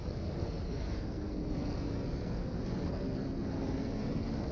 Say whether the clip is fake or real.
fake